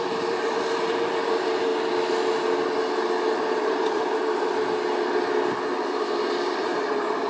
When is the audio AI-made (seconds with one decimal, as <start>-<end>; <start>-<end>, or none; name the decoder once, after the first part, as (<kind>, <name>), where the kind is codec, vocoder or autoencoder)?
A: 0.0-1.7 (vocoder, BigVGAN v2); 3.5-4.5; 5.7-7.3